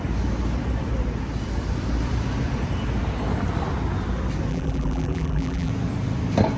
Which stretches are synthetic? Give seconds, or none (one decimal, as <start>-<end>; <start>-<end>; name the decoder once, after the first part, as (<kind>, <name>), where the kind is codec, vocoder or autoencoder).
4.5-5.7 (vocoder, BigVGAN v2)